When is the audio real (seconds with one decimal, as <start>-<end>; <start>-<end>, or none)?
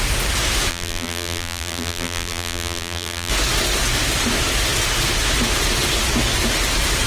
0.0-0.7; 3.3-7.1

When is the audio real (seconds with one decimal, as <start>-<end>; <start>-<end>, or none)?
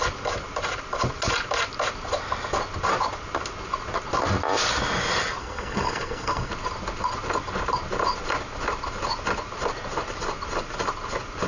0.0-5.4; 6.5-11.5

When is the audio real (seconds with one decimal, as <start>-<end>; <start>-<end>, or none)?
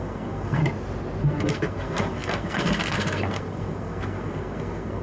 0.6-1.2